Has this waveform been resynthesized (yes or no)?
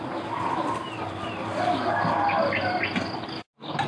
no